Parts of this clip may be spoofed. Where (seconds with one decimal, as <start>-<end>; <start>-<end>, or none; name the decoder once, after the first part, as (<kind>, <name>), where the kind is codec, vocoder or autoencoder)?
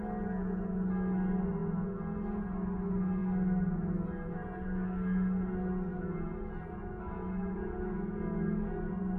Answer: none